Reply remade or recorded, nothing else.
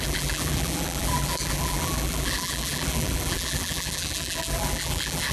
remade